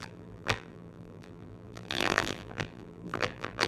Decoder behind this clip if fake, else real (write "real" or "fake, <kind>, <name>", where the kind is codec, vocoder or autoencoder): fake, vocoder, BigVGAN v2